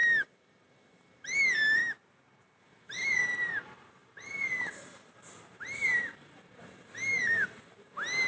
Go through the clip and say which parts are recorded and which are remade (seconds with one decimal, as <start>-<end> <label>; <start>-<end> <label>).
0.0-1.8 remade; 1.8-2.6 recorded; 2.6-8.3 remade